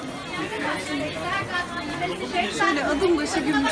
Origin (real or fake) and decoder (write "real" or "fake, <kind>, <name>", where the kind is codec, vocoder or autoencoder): real